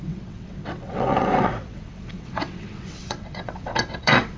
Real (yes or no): no